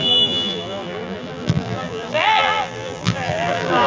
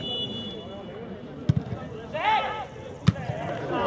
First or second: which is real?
second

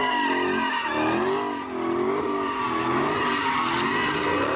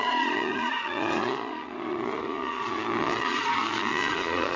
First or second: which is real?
first